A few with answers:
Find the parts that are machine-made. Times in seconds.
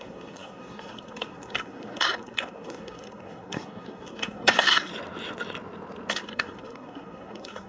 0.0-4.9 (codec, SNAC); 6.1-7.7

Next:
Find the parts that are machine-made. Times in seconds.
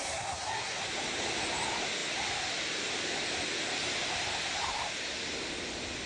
0.0-0.8 (codec, SNAC)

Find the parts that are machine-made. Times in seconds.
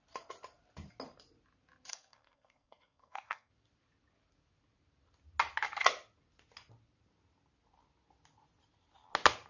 1.9-3.5 (codec, SNAC)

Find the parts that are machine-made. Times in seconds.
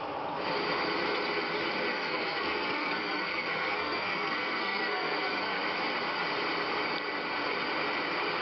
1.9-5.6 (codec, SNAC)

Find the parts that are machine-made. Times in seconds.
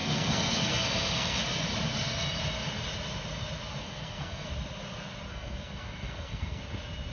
0.0-1.4 (codec, SNAC); 3.8-4.5; 5.3-6.6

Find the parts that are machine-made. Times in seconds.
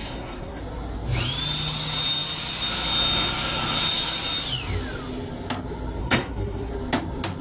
0.0-0.6 (codec, SNAC); 6.0-6.7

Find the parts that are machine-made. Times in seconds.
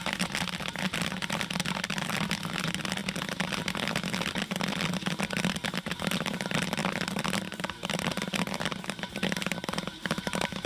none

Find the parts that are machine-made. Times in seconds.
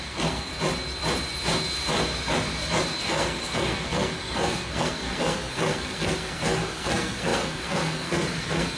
0.0-0.5 (codec, SNAC); 3.0-8.8